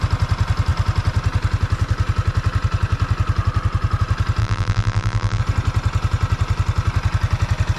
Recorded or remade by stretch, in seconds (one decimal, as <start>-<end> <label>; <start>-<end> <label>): 0.0-4.4 recorded; 4.4-5.4 remade; 5.4-7.8 recorded